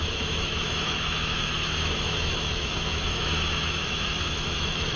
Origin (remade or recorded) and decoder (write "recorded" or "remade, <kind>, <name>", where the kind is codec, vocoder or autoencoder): remade, autoencoder, DAC-VAE